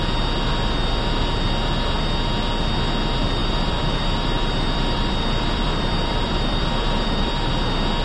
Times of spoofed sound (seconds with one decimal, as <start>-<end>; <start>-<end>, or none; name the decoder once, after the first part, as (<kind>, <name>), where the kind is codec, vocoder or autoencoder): 3.4-7.5 (vocoder, BigVGAN v2)